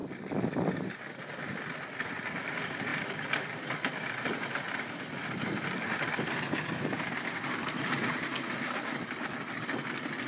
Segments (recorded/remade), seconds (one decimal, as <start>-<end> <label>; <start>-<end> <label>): 0.0-0.7 remade; 0.7-2.9 recorded; 2.9-5.0 remade; 5.0-10.3 recorded